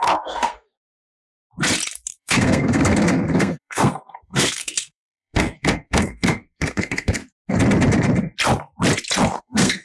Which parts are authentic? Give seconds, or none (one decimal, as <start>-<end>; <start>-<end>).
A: 1.0-2.1; 7.2-9.4